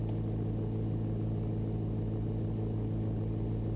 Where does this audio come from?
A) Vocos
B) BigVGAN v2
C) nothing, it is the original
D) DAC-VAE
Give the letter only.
C